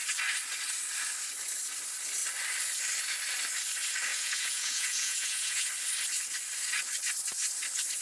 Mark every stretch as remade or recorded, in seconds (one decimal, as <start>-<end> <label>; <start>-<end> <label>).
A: 0.0-4.1 recorded; 4.1-5.7 remade; 5.7-8.0 recorded